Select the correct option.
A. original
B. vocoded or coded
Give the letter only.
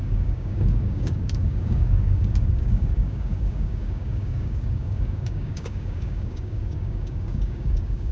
B